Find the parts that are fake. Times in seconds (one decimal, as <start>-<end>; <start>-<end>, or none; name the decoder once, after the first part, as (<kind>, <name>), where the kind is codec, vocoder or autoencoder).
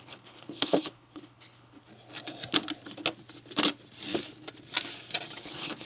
0.0-1.9 (codec, HILCodec); 5.4-5.9